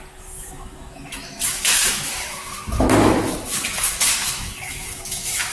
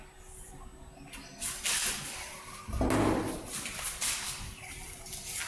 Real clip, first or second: second